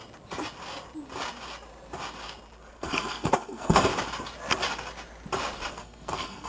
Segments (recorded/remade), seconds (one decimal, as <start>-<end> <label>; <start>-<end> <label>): 0.0-2.7 recorded; 2.7-3.9 remade; 3.9-5.7 recorded; 5.7-6.5 remade

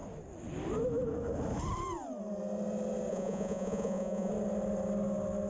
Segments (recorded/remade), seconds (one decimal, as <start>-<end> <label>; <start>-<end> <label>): 0.0-3.1 recorded; 3.1-4.3 remade; 4.3-5.5 recorded

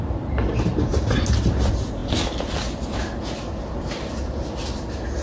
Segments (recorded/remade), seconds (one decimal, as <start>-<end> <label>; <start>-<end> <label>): 0.0-0.7 recorded; 0.7-1.5 remade; 1.5-5.2 recorded

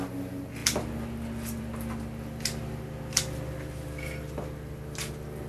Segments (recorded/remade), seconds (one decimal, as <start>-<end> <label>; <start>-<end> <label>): 0.0-5.5 recorded

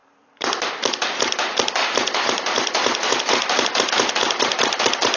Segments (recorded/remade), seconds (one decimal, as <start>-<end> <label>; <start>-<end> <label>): 0.0-0.7 remade; 0.7-1.8 recorded; 1.8-3.9 remade; 3.9-5.2 recorded

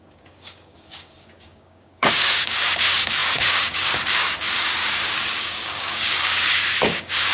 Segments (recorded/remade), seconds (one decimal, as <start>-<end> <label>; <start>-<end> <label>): 0.0-7.3 remade